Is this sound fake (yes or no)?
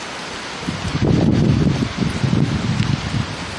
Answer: no